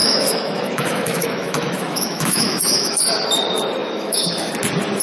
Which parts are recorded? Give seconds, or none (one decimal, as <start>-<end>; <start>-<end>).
3.0-3.8; 4.5-5.0

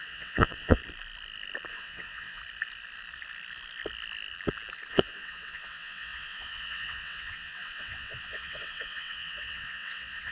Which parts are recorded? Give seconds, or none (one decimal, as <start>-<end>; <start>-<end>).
0.8-1.7; 2.4-4.9